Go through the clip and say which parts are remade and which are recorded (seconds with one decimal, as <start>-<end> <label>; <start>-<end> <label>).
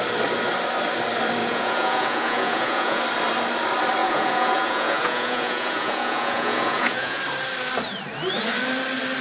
0.0-1.4 recorded; 1.4-3.0 remade; 3.0-4.0 recorded; 4.0-7.2 remade; 7.2-9.2 recorded